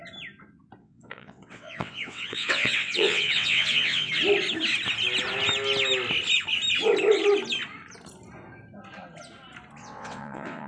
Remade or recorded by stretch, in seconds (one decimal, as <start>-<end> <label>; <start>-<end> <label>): 0.0-0.8 recorded; 0.8-4.1 remade; 4.1-9.8 recorded; 9.8-10.7 remade